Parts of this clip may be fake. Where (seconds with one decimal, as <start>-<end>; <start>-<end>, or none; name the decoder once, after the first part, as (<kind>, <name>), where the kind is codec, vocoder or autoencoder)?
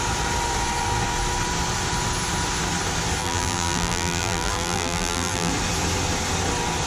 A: 3.2-5.5 (vocoder, BigVGAN v2)